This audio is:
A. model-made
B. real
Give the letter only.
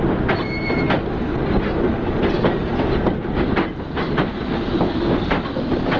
B